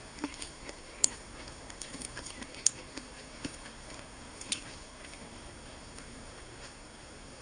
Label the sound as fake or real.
fake